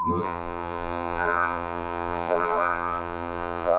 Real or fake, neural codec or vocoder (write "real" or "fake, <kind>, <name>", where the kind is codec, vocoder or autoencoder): fake, vocoder, BigVGAN v2